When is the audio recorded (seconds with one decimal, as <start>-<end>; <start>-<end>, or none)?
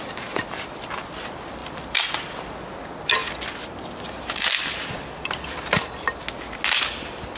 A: 0.0-1.6; 2.1-3.2; 5.9-7.4